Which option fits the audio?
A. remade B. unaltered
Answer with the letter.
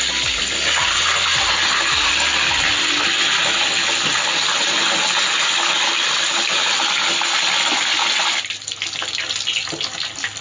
B